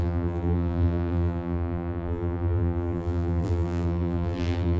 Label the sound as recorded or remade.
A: remade